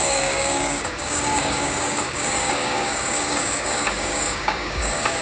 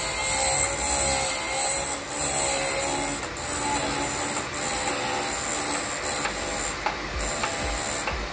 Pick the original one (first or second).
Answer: second